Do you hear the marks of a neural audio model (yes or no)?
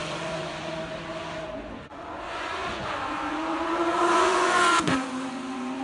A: yes